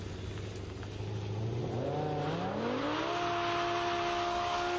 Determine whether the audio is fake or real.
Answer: real